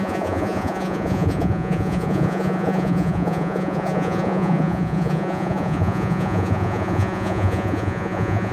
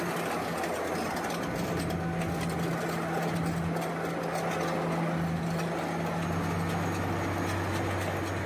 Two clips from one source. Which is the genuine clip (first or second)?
second